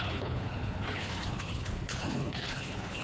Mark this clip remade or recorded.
remade